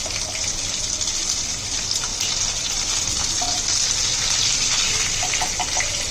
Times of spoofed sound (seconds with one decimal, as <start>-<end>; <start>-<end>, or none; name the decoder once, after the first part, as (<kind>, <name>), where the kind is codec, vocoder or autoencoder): none

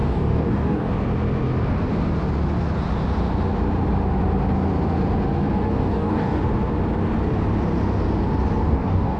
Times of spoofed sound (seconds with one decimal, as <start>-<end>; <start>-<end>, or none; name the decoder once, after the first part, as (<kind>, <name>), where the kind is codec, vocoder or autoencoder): 0.0-0.9 (codec, DAC); 5.7-6.4; 8.6-9.2

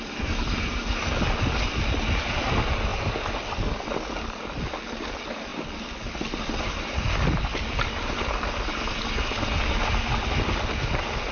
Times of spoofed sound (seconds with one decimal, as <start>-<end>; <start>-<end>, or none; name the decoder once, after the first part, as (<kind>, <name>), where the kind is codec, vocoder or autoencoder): none

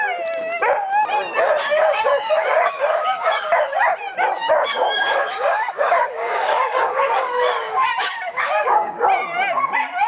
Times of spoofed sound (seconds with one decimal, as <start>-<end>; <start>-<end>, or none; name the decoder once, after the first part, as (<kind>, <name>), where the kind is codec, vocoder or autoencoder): 1.6-3.8 (codec, DAC); 4.5-9.0